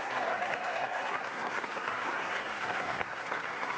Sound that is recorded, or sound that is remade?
remade